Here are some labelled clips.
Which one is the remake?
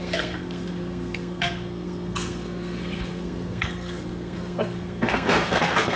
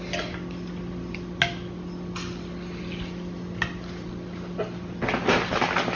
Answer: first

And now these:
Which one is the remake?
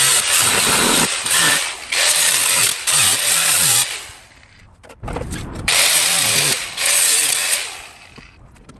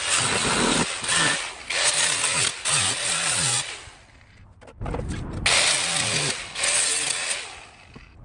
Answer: first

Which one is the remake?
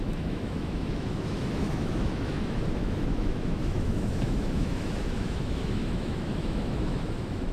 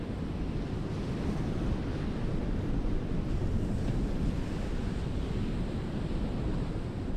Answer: first